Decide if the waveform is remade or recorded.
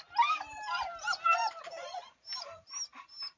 recorded